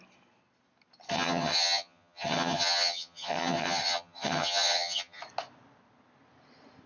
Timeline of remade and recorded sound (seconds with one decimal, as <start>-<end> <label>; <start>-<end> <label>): 0.0-1.1 recorded; 1.1-5.2 remade; 5.2-6.9 recorded

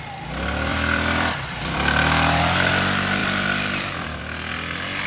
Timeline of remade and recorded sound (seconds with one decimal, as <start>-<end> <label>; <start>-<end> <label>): 0.0-0.7 recorded; 0.7-2.7 remade; 2.7-3.2 recorded; 3.2-4.2 remade; 4.2-5.1 recorded

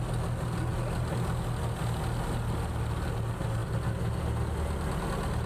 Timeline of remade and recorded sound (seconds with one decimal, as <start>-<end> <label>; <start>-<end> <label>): 0.0-5.5 recorded

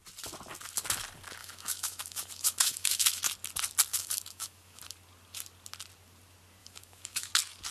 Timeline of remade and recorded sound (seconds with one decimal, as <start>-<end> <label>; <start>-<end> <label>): 0.0-1.4 recorded; 1.4-3.2 remade; 3.2-3.9 recorded; 3.9-4.8 remade; 4.8-6.6 recorded; 6.6-7.3 remade; 7.3-7.7 recorded

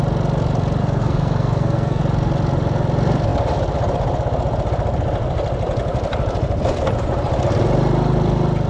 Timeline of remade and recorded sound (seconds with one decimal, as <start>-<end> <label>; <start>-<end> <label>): 0.0-0.8 recorded; 0.8-2.0 remade; 2.0-8.7 recorded

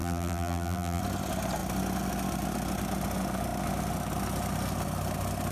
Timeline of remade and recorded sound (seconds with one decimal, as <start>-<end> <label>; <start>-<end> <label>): 0.0-1.0 remade; 1.0-5.5 recorded